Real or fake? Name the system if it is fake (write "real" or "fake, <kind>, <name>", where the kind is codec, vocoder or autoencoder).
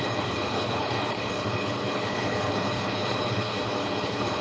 fake, codec, HILCodec